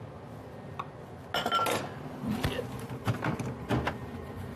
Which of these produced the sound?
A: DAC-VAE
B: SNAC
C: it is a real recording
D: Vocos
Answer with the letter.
C